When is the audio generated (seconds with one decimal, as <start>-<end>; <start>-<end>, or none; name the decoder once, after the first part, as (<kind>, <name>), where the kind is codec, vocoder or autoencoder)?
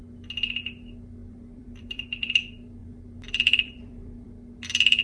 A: 1.2-2.3 (vocoder, BigVGAN v2); 2.8-4.3